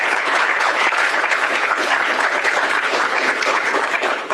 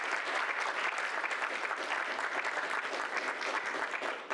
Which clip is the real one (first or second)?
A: second